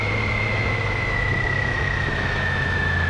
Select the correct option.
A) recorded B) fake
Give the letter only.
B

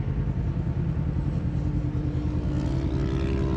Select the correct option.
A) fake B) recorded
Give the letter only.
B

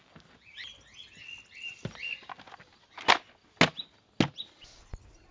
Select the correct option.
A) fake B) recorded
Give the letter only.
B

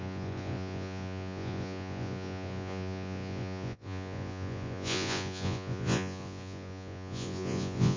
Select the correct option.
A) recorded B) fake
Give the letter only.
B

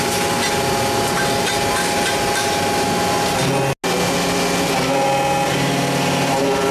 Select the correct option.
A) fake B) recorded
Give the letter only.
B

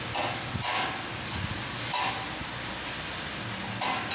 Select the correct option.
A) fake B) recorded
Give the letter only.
B